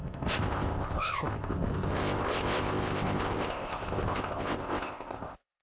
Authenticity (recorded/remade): remade